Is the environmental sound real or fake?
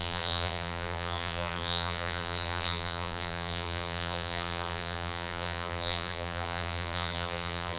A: fake